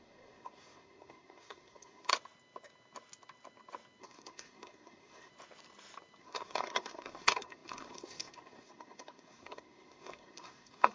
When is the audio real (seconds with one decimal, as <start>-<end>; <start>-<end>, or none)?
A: 2.1-4.0; 5.3-6.2